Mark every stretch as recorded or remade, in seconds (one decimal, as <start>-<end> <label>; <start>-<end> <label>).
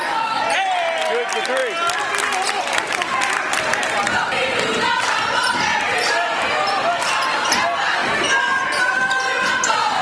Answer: 0.0-3.5 recorded; 3.5-4.0 remade; 4.0-5.9 recorded; 5.9-6.9 remade; 6.9-10.0 recorded